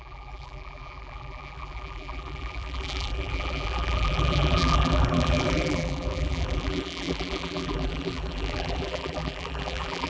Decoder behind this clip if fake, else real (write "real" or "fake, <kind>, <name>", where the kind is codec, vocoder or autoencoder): fake, vocoder, BigVGAN v2